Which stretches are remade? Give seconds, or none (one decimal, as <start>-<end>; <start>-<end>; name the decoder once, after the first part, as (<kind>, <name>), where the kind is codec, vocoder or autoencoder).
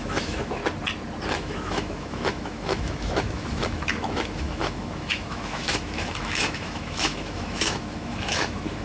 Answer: 0.0-0.6 (autoencoder, DAC-VAE); 1.3-8.8